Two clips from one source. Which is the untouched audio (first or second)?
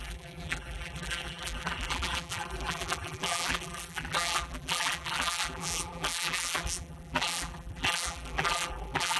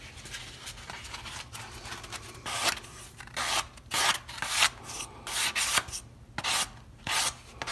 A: second